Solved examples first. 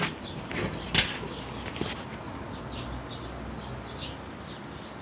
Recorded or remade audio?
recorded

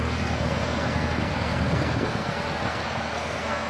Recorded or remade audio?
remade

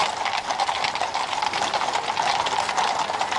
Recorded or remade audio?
recorded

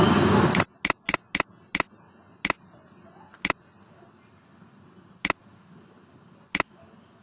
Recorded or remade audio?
recorded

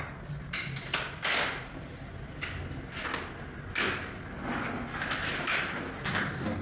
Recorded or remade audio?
recorded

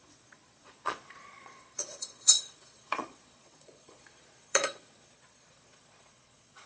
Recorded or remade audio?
remade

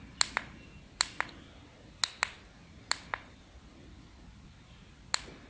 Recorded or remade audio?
recorded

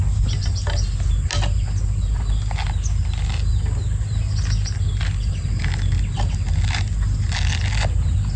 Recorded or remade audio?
recorded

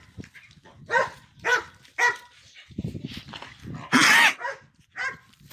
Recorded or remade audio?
recorded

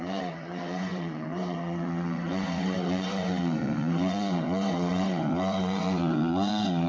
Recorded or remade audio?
remade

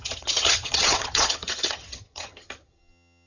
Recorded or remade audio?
remade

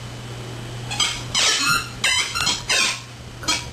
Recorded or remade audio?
recorded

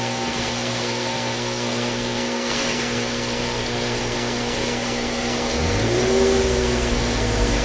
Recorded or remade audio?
remade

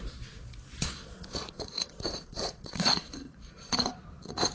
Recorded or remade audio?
remade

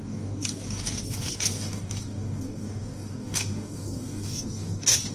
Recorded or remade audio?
remade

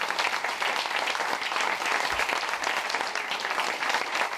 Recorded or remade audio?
remade